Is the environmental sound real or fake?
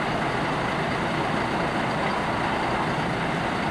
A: real